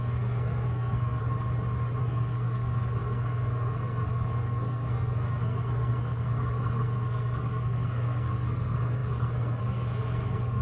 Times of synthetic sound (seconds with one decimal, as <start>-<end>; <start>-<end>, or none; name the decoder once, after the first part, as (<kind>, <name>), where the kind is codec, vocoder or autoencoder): 0.0-1.2 (codec, SNAC); 2.0-10.6

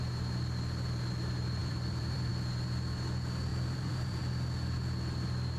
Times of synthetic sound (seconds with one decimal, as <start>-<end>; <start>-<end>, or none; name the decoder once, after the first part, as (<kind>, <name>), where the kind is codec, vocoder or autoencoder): 1.6-2.3 (vocoder, BigVGAN v2); 3.5-4.2

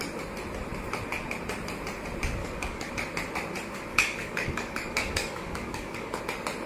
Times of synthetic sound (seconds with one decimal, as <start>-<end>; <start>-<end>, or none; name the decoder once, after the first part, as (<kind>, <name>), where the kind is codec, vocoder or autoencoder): 2.4-2.9 (codec, DAC); 3.9-6.2

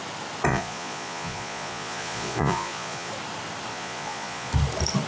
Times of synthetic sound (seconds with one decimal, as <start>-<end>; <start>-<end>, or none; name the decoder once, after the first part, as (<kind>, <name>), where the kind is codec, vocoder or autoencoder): 0.5-3.1 (vocoder, Vocos); 3.7-4.5

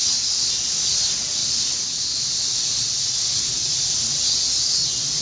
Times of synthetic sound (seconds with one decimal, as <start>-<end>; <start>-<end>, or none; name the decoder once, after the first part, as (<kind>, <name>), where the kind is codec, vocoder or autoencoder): 1.4-2.4 (vocoder, BigVGAN v2)

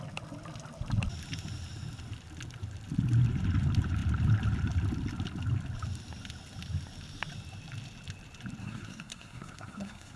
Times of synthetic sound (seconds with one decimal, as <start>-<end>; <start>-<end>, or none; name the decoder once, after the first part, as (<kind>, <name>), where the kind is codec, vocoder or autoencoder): 8.6-10.2 (codec, SNAC)

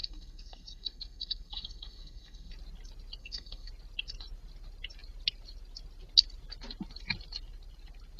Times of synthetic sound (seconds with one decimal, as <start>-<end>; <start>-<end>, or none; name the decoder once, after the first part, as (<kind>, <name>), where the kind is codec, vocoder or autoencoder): 0.0-2.5 (codec, SNAC); 3.2-3.7

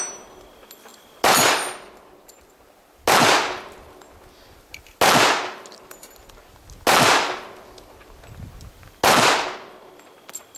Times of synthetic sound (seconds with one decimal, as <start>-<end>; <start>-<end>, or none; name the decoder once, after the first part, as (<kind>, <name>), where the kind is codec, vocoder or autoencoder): none